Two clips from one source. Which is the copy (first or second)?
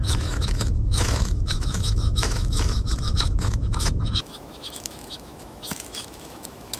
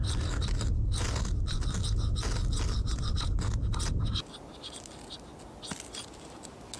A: first